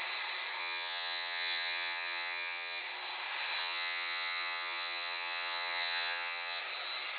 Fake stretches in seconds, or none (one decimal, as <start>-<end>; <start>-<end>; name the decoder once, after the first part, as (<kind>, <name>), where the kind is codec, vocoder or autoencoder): 0.6-2.8 (vocoder, HiFi-GAN); 3.6-6.6